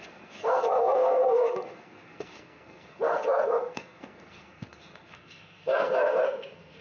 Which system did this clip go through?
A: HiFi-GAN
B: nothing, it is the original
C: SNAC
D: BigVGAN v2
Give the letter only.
C